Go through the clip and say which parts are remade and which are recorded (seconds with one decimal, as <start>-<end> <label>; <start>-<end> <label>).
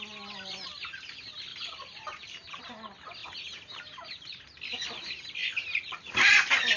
0.0-1.5 recorded; 1.5-2.6 remade; 2.6-5.4 recorded; 5.4-6.1 remade; 6.1-6.8 recorded